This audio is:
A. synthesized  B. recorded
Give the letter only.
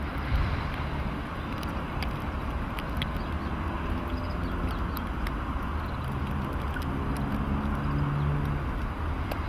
B